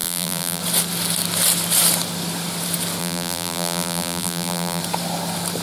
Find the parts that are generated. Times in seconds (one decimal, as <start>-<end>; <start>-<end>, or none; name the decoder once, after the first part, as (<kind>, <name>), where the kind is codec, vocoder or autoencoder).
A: 0.0-0.6 (vocoder, BigVGAN v2); 3.0-4.8